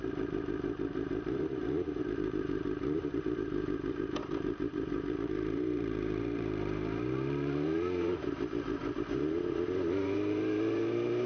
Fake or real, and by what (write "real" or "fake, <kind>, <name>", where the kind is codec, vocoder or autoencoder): fake, vocoder, BigVGAN v2